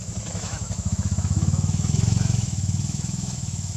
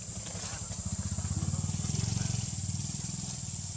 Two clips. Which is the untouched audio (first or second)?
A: second